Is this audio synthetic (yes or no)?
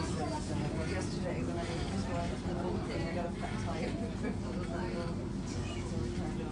no